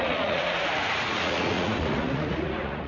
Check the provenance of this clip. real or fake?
fake